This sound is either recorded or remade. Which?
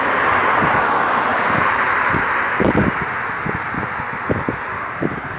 recorded